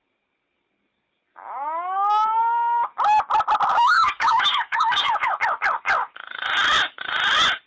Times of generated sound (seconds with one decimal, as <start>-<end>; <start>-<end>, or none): 3.7-5.3